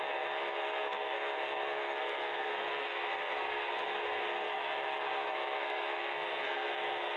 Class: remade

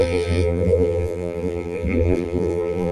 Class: remade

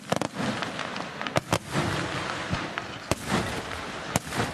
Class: recorded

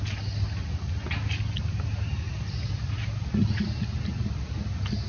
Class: recorded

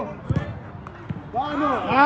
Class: recorded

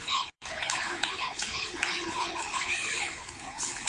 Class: remade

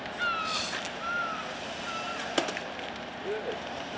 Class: recorded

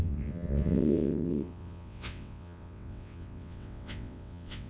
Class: remade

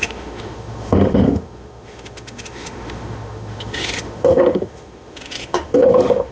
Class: remade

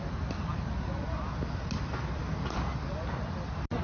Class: recorded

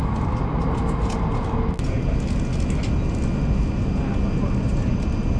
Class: recorded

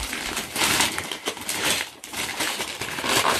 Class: remade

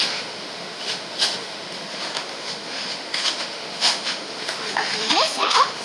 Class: remade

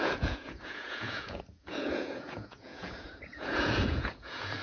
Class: remade